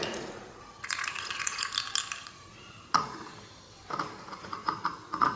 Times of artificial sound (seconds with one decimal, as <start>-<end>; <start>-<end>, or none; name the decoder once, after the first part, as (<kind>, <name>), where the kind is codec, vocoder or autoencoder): 0.0-1.7 (vocoder, Vocos); 2.2-3.3; 4.2-5.4